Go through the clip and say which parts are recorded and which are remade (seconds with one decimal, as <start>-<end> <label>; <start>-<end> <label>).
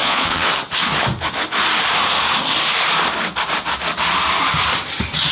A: 0.0-0.5 remade; 0.5-5.3 recorded